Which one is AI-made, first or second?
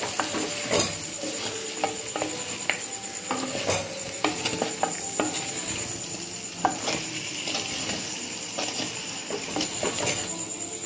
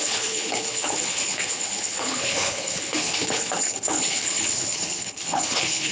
second